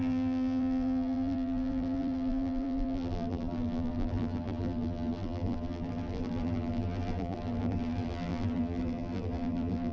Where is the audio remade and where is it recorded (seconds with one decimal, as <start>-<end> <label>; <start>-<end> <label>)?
0.0-9.9 remade